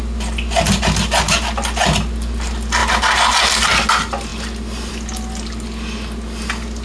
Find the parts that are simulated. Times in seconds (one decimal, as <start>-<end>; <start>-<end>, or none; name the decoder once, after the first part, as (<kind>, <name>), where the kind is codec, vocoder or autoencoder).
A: none